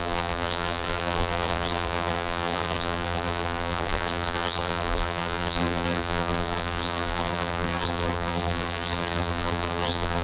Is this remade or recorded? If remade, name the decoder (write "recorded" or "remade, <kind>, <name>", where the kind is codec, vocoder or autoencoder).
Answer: remade, vocoder, BigVGAN v2